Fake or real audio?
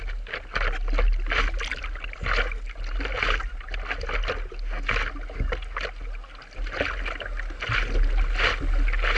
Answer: real